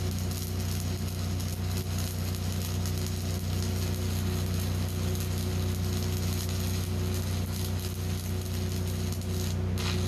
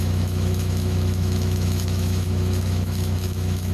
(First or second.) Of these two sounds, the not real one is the second